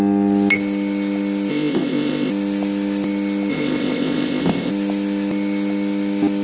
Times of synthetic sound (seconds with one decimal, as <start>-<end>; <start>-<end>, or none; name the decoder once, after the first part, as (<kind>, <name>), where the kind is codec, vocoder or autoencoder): 1.5-2.3 (codec, ZipCodec); 3.5-4.7